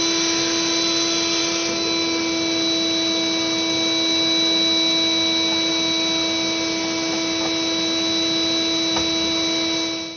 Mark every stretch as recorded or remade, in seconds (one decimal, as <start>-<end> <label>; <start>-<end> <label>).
0.0-10.2 recorded